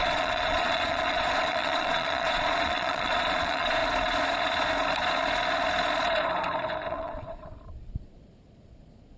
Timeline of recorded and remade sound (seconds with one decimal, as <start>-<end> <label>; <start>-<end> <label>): 0.0-3.8 remade; 3.8-6.9 recorded; 6.9-9.2 remade